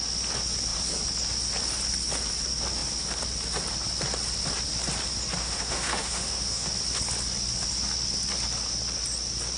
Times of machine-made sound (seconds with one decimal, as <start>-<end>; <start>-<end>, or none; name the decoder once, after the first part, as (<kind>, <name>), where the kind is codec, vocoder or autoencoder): 5.4-6.7 (autoencoder, DAC-VAE)